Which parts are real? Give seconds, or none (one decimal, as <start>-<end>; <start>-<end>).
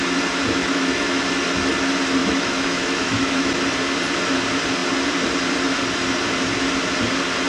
0.0-0.6; 1.2-2.2; 3.5-7.5